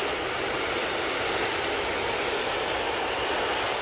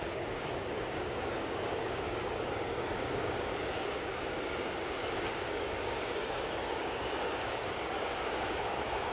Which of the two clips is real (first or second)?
first